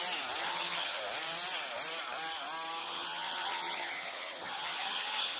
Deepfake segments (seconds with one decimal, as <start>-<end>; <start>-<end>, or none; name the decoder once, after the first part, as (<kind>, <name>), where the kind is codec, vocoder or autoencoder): 0.4-1.0 (vocoder, HiFi-GAN); 2.8-5.4